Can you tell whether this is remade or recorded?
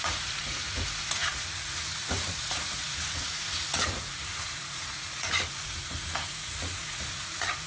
remade